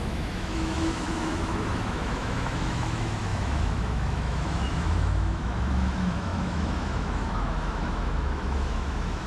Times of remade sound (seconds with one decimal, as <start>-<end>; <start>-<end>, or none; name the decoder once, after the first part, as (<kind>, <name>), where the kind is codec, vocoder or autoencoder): 0.0-9.3 (autoencoder, DAC-VAE)